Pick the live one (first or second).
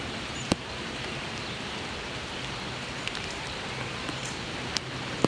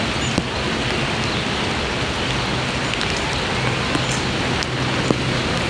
second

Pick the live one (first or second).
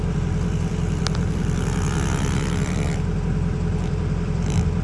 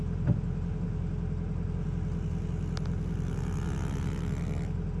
second